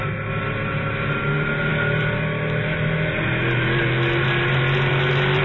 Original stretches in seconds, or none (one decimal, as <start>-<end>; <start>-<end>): 0.0-5.4